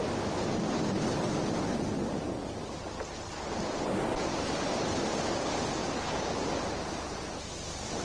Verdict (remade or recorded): recorded